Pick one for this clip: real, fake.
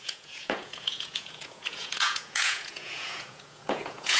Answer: fake